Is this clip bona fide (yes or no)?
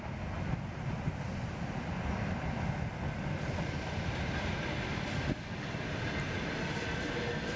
yes